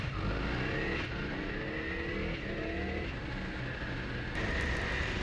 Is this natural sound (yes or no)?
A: yes